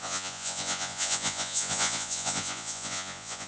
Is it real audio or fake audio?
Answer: fake